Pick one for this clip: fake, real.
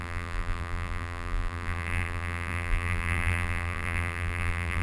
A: fake